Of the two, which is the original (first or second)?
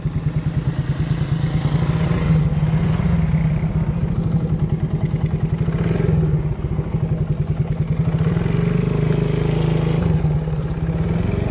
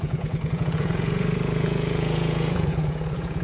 first